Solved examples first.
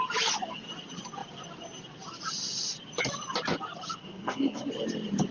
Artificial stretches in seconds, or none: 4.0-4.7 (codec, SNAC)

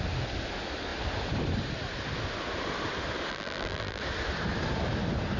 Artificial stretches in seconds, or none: 3.3-4.0 (vocoder, BigVGAN v2)

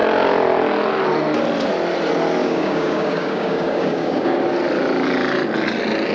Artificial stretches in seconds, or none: 2.4-4.4 (codec, DAC)

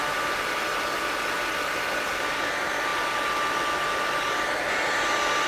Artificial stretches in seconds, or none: none

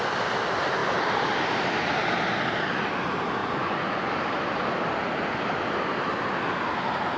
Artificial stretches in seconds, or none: 3.4-4.1 (vocoder, Vocos)

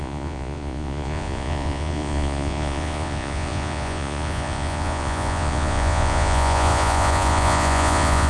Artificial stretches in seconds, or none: 0.0-8.3 (vocoder, Vocos)